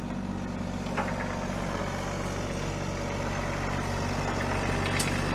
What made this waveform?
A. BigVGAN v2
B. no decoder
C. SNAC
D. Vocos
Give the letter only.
B